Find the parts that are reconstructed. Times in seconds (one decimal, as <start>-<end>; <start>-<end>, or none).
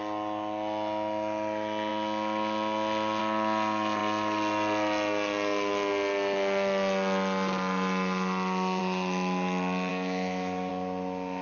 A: 9.9-10.7